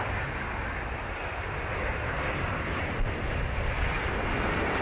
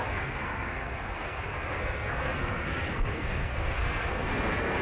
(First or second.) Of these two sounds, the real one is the first